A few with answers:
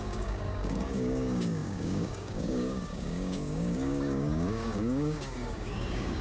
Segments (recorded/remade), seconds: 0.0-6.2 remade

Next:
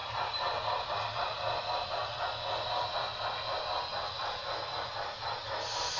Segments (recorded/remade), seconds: 0.0-6.0 recorded

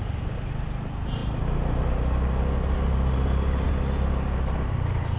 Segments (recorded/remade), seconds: 0.0-5.2 recorded

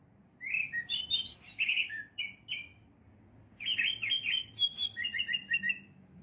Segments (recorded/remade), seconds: 0.0-1.3 recorded; 1.3-2.2 remade; 2.2-6.2 recorded

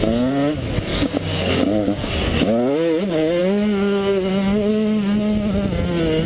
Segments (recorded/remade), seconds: 0.0-0.9 recorded; 0.9-2.1 remade; 2.1-6.3 recorded

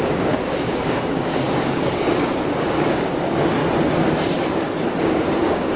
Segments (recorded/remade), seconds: 0.0-3.6 remade; 3.6-5.0 recorded; 5.0-5.8 remade

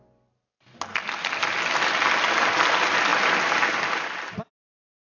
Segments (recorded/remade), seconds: 0.0-5.1 recorded

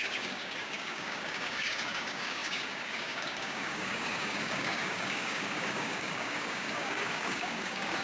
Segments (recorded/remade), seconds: 0.0-8.0 remade